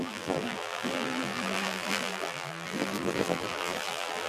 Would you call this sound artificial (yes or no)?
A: yes